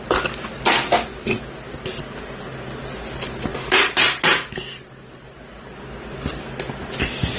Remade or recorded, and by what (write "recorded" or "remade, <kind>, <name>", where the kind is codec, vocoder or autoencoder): recorded